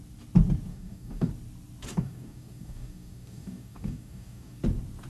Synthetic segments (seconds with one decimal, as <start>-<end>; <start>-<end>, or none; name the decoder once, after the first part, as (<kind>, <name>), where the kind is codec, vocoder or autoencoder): 0.7-1.3 (codec, DAC); 1.9-4.6